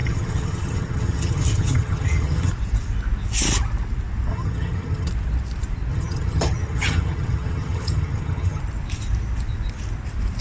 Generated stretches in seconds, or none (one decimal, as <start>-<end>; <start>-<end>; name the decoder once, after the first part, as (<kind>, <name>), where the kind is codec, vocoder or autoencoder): 0.0-2.5 (vocoder, HiFi-GAN); 4.3-5.1; 5.9-8.6